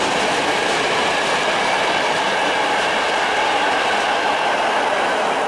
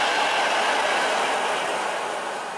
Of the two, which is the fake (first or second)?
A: first